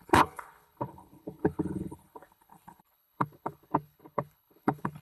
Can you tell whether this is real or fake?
fake